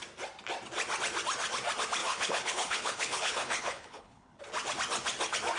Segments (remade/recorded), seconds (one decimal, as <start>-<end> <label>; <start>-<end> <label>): 0.0-2.0 recorded; 2.0-4.4 remade; 4.4-5.6 recorded